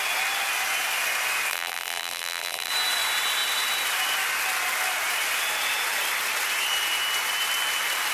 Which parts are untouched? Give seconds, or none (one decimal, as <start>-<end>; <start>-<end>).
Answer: 0.0-1.5; 2.7-8.1